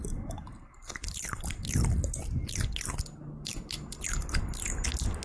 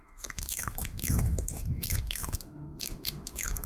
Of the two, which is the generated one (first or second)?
second